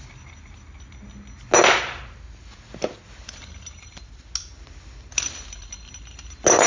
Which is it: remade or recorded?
recorded